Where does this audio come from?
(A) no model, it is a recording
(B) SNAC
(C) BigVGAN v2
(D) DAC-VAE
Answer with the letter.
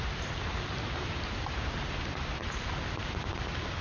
C